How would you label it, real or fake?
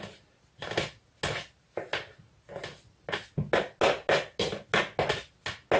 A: real